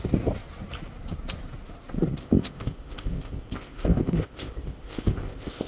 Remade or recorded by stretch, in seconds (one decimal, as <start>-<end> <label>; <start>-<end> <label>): 0.0-2.2 recorded; 2.2-5.7 remade